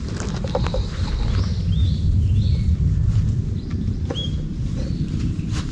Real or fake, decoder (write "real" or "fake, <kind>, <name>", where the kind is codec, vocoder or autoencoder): real